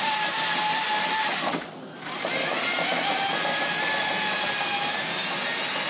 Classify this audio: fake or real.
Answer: real